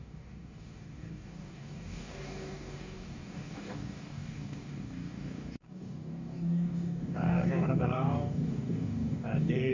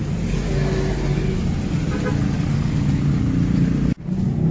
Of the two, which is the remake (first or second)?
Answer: first